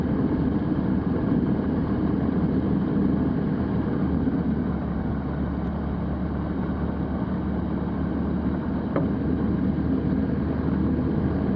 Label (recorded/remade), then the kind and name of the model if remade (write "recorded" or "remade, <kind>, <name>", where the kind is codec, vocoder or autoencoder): recorded